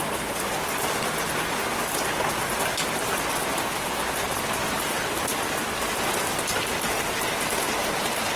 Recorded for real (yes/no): yes